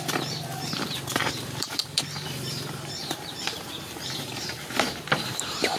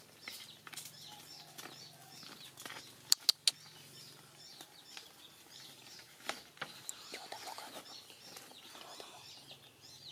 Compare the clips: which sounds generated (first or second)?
first